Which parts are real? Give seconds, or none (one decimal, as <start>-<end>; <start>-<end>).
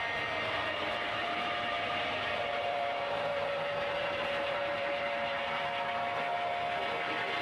0.0-1.2; 5.6-7.4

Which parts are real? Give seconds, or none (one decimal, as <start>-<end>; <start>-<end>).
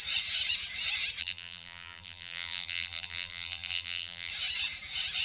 0.0-1.2; 4.3-5.2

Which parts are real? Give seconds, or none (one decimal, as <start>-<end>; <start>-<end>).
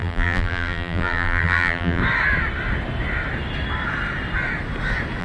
2.0-5.2